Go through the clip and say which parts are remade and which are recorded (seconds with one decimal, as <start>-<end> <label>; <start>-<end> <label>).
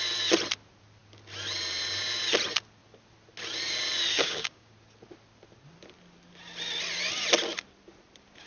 0.0-4.1 recorded; 4.1-4.7 remade; 4.7-8.5 recorded